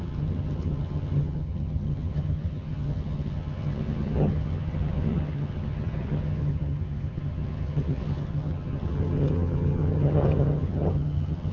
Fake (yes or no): yes